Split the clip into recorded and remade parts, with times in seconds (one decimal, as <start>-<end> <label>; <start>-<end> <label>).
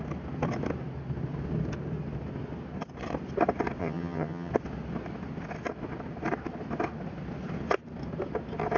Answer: 0.0-3.8 recorded; 3.8-4.5 remade; 4.5-8.8 recorded